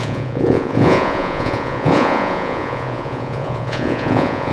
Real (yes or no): no